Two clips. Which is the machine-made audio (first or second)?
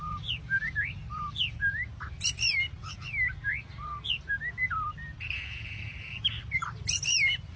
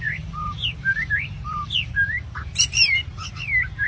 second